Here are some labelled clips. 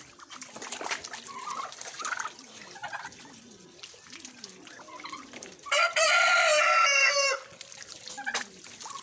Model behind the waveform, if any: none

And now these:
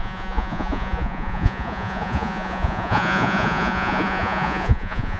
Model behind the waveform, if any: vocoder, Vocos